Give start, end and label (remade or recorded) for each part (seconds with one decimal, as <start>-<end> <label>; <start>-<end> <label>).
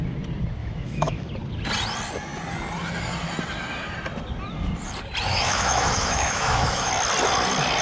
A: 0.0-0.6 recorded; 0.6-1.3 remade; 1.3-5.3 recorded; 5.3-6.9 remade; 6.9-7.8 recorded